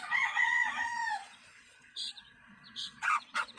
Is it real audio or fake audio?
fake